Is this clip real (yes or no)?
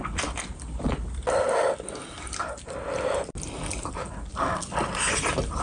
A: yes